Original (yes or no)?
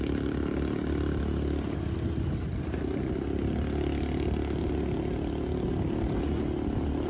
yes